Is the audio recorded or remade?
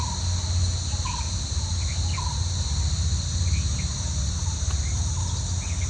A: recorded